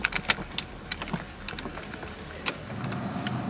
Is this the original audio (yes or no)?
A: yes